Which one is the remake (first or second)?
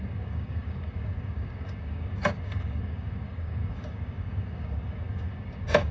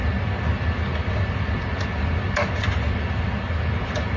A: first